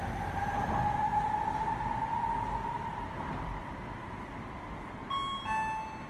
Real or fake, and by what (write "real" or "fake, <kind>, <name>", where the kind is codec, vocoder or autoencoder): real